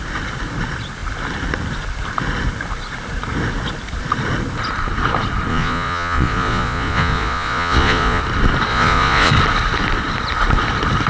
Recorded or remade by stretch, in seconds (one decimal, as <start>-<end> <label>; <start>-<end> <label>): 0.0-5.5 recorded; 5.5-8.2 remade; 8.2-8.7 recorded; 8.7-9.3 remade; 9.3-11.1 recorded